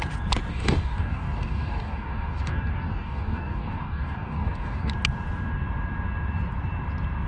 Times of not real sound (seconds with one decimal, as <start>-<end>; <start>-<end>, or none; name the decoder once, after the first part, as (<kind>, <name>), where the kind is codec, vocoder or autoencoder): 0.5-4.9 (codec, DAC)